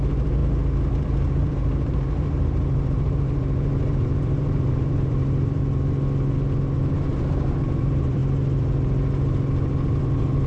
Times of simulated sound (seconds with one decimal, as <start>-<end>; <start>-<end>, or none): 0.0-0.4; 0.9-5.6; 6.9-8.2; 10.0-10.5